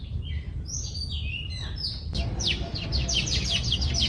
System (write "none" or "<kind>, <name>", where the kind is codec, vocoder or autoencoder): none